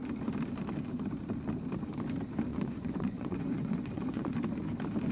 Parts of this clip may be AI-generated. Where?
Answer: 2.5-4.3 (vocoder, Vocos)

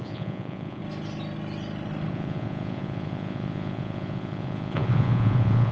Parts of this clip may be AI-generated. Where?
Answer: 0.0-0.8 (vocoder, Vocos); 2.1-5.7

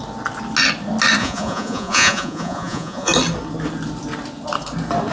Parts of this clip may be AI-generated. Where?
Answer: 1.2-3.1 (vocoder, Vocos)

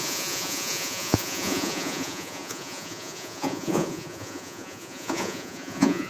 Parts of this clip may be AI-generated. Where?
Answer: 0.0-6.1 (vocoder, Vocos)

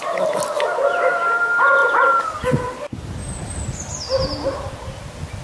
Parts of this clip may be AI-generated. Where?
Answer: none